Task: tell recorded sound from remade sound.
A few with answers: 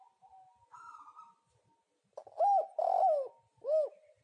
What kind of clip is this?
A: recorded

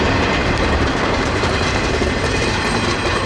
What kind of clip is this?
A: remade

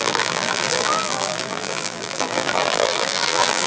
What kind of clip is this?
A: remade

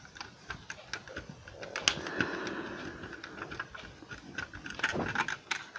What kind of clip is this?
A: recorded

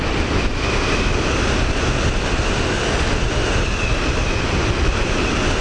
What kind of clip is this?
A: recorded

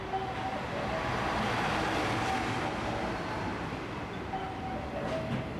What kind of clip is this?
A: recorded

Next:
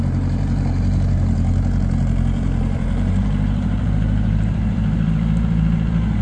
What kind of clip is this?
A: remade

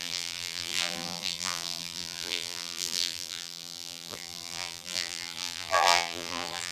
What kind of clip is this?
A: remade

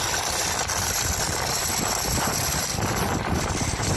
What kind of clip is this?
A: remade